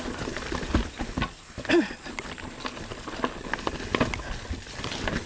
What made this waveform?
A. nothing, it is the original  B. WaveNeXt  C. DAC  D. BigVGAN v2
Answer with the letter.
A